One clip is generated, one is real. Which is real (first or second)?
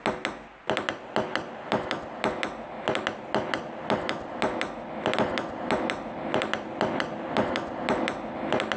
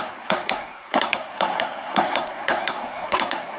first